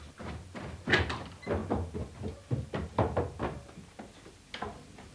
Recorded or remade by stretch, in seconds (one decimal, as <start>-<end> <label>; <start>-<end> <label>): 0.0-5.1 recorded